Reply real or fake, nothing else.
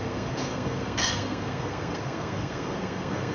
fake